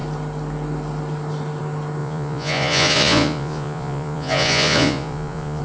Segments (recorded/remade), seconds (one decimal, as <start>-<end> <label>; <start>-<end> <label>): 0.0-2.0 recorded; 2.0-5.6 remade